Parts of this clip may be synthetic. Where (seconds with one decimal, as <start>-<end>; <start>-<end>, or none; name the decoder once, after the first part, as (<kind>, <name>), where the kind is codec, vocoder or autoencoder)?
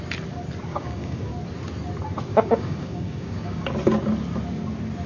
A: 0.7-1.3 (codec, DAC); 2.3-3.7